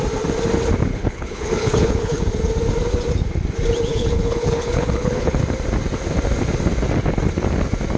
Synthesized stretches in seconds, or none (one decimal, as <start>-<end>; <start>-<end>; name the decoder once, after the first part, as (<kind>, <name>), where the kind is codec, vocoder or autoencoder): 0.9-2.2 (codec, HILCodec); 3.9-5.4